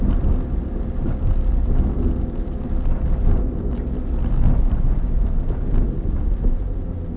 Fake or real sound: real